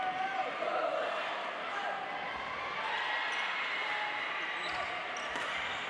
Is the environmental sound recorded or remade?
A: recorded